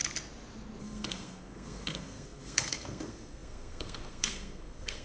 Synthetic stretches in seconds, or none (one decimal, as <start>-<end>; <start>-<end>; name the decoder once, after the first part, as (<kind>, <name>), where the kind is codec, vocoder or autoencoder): 0.8-5.0 (codec, SNAC)